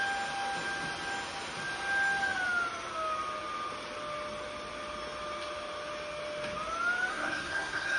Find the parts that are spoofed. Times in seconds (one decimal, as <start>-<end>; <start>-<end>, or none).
7.1-8.0